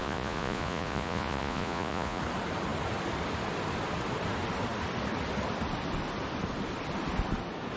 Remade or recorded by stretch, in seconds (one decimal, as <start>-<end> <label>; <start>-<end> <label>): 0.0-2.2 remade; 2.2-7.8 recorded